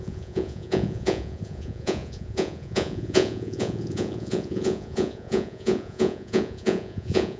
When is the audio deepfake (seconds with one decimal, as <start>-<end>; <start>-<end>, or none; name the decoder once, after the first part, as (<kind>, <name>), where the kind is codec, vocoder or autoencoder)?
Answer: 0.0-7.4 (vocoder, Vocos)